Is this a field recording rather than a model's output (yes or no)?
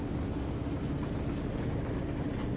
yes